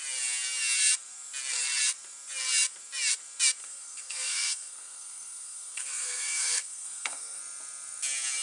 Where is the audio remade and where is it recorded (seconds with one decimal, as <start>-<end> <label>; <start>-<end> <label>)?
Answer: 0.0-3.6 recorded; 3.6-7.4 remade; 7.4-8.4 recorded